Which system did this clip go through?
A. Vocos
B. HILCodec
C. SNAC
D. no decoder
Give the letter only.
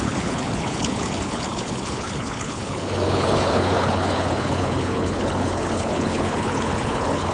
B